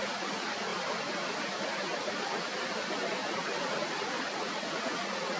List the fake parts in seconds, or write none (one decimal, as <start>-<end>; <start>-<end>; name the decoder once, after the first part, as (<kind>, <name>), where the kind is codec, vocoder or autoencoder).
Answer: 0.0-0.7 (vocoder, Vocos); 3.7-5.4